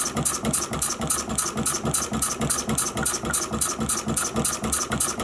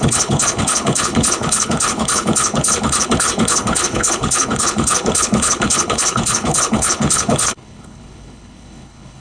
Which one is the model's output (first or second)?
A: second